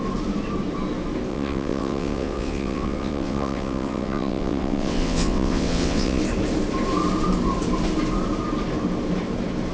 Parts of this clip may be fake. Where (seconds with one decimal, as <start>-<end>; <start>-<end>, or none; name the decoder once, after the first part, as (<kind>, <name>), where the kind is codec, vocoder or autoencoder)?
1.3-6.2 (vocoder, WaveNeXt)